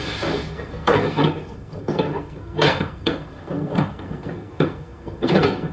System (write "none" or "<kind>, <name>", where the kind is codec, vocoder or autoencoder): codec, SNAC